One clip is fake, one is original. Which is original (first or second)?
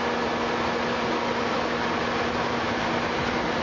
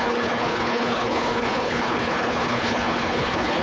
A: first